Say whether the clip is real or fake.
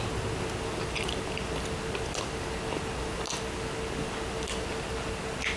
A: real